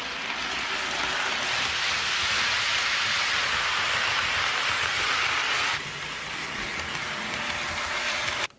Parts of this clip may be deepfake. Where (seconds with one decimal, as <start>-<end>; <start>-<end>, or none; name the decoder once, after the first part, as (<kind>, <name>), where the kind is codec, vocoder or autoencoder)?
none